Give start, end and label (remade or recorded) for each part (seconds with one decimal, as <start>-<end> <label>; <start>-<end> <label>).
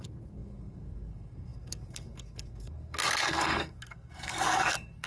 0.0-5.1 remade